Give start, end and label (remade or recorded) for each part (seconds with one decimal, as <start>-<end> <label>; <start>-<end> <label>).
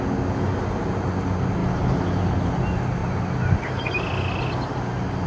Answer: 0.0-5.3 recorded